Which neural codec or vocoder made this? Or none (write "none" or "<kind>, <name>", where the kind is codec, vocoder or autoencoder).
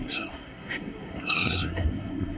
codec, SNAC